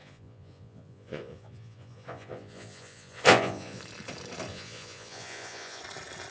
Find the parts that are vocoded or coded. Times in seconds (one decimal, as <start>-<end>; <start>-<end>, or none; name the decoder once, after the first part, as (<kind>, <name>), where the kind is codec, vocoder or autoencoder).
0.0-3.8 (vocoder, Vocos); 4.5-5.8